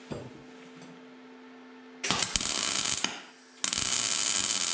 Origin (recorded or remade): recorded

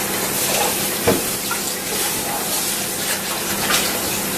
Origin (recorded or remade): recorded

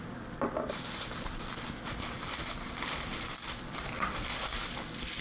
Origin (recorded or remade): remade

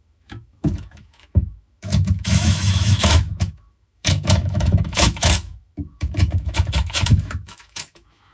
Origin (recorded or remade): remade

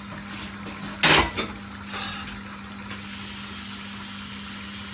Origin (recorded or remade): recorded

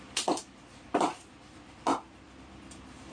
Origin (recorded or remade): recorded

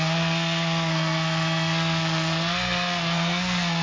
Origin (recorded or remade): remade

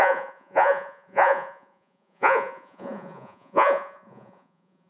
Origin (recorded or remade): remade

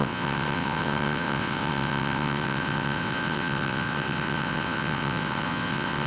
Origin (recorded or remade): remade